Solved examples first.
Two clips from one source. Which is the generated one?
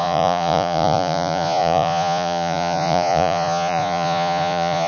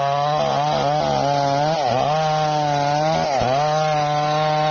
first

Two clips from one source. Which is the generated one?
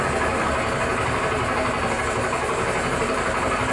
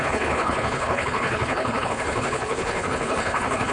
second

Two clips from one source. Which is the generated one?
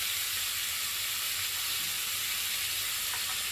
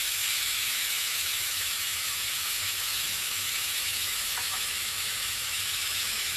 second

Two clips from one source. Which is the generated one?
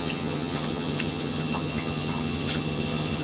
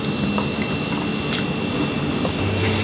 first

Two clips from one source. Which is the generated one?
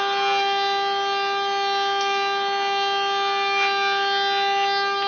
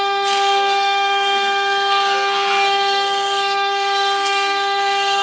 second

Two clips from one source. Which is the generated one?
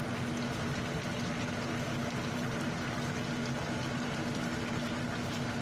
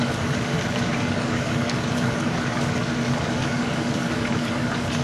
second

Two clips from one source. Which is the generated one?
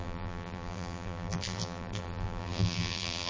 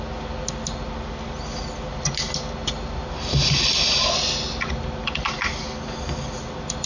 first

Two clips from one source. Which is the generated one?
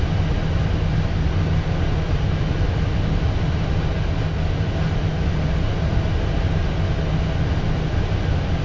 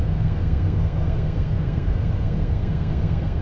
second